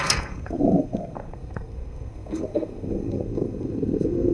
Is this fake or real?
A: fake